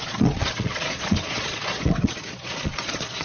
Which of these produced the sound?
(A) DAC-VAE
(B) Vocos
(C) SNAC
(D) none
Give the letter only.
B